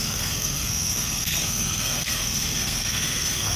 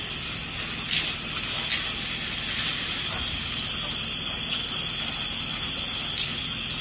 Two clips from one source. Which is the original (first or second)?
second